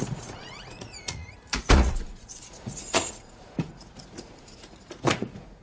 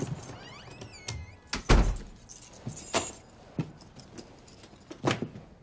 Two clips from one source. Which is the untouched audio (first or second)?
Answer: second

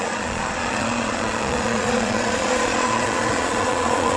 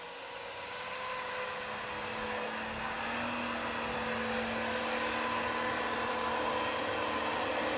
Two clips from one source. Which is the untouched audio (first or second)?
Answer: second